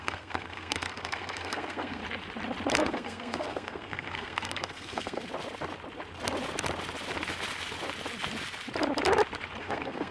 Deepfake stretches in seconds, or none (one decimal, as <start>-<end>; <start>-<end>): 0.0-2.0; 2.7-5.2; 9.6-10.1